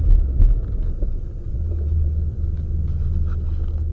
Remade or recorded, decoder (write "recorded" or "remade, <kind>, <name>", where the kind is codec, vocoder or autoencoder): recorded